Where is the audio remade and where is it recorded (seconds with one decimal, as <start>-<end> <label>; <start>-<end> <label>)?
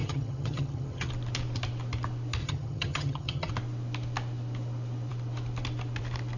0.0-1.1 remade; 1.1-2.4 recorded; 2.4-3.5 remade; 3.5-6.4 recorded